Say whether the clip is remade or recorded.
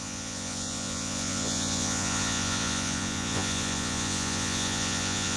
remade